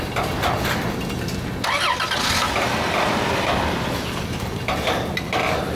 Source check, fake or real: real